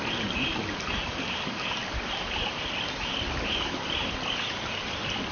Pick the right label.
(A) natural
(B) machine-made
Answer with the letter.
A